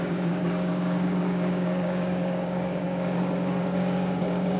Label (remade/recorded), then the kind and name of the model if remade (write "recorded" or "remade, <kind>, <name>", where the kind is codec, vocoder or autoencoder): remade, codec, DAC